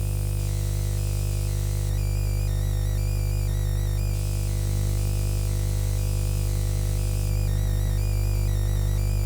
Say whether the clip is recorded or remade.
recorded